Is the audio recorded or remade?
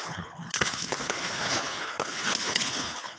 remade